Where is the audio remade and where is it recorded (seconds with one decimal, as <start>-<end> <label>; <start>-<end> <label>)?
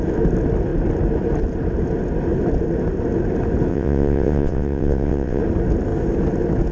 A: 0.0-3.7 recorded; 3.7-5.4 remade; 5.4-6.7 recorded